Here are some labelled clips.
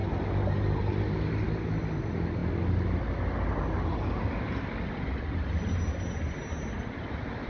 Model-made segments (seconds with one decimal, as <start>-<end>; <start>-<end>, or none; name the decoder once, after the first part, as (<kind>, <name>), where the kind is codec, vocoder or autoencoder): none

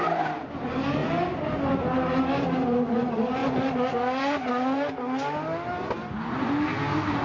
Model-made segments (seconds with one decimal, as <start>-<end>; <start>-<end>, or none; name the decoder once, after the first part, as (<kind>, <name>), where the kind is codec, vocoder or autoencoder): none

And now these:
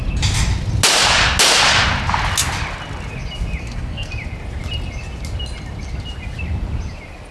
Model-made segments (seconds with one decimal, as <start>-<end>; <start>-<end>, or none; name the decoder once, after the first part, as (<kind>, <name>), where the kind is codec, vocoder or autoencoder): 3.6-4.1 (codec, SNAC)

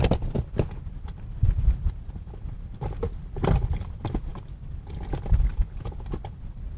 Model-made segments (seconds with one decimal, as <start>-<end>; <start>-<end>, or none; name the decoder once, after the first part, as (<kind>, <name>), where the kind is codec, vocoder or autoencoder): none

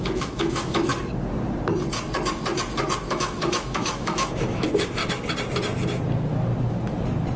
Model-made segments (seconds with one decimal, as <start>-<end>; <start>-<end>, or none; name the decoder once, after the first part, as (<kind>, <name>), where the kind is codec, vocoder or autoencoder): 0.0-0.9 (autoencoder, DAC-VAE); 3.1-5.0

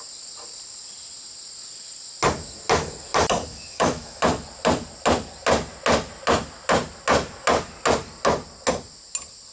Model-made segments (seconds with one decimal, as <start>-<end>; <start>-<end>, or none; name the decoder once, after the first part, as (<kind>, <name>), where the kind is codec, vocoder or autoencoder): 3.5-4.2 (autoencoder, DAC-VAE)

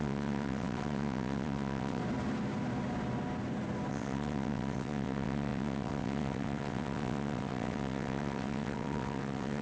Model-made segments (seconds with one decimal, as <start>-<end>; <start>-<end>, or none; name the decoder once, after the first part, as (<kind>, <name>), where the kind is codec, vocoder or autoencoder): 0.0-2.0 (vocoder, WaveNeXt); 3.9-9.6